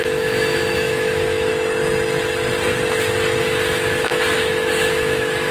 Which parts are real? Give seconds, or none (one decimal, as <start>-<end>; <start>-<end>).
1.5-3.4